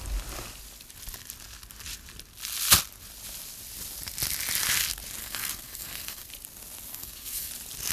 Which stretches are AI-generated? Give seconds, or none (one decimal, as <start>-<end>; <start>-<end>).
5.2-6.3; 6.9-7.5